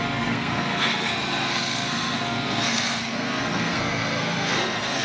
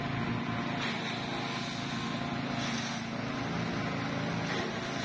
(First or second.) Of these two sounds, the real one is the second